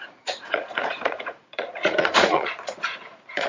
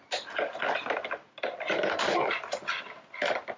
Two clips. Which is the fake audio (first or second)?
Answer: first